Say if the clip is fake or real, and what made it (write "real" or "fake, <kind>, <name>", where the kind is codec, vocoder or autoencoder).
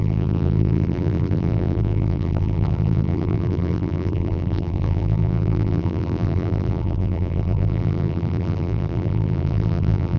fake, vocoder, BigVGAN v2